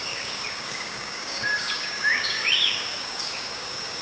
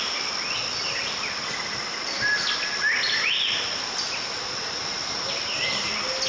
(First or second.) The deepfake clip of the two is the first